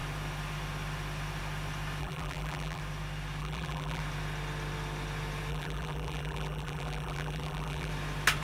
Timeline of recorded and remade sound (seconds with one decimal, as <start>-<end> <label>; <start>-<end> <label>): 0.0-2.0 recorded; 2.0-2.8 remade; 2.8-3.4 recorded; 3.4-4.0 remade; 4.0-5.5 recorded; 5.5-7.9 remade; 7.9-8.4 recorded

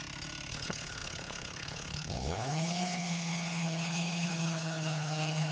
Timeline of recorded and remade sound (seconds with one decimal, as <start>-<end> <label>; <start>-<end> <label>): 0.0-0.5 recorded; 0.5-5.5 remade

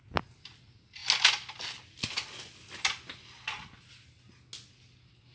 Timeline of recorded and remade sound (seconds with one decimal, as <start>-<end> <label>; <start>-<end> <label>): 0.0-5.3 recorded